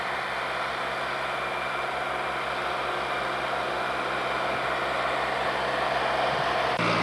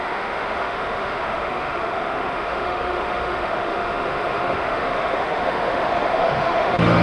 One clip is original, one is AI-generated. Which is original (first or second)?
first